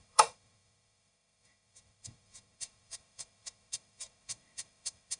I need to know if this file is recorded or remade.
remade